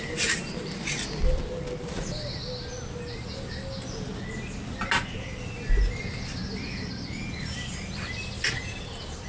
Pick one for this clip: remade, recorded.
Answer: recorded